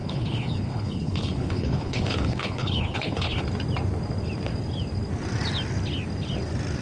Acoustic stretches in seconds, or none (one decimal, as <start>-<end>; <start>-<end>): 3.4-6.8